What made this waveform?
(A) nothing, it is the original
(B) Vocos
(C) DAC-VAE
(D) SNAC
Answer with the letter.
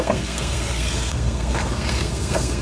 D